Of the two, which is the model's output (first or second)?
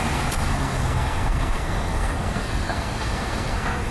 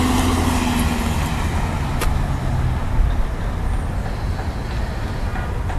first